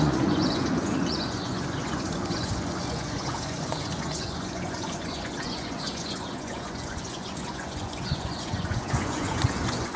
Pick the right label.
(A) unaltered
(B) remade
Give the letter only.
B